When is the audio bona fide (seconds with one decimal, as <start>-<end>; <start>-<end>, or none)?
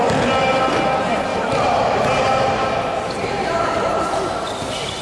0.0-1.3; 4.3-5.0